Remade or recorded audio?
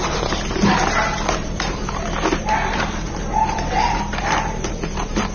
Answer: remade